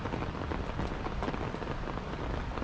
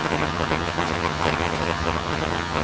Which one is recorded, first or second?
first